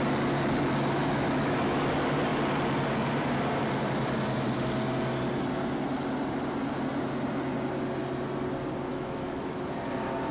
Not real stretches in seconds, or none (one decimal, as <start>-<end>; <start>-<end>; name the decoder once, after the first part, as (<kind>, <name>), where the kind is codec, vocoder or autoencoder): 1.0-1.9 (autoencoder, DAC-VAE); 8.9-9.6